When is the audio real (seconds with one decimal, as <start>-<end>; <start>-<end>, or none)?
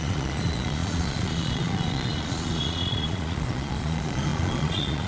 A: none